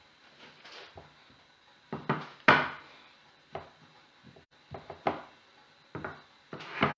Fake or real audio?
real